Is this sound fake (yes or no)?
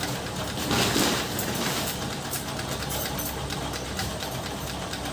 yes